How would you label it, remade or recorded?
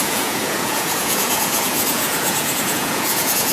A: remade